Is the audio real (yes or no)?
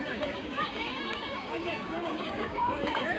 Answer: no